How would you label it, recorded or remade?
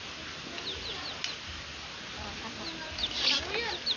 recorded